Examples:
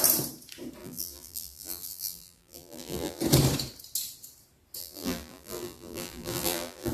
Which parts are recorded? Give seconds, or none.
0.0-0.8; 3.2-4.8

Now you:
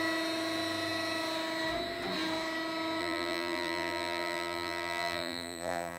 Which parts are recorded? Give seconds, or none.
0.0-3.0

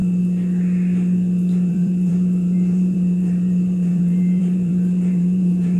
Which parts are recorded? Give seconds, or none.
0.0-1.7